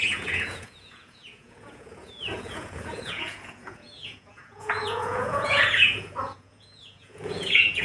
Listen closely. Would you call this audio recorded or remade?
remade